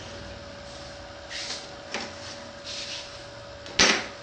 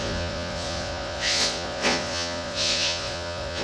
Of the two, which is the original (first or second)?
first